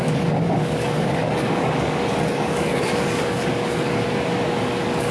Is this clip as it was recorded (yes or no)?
no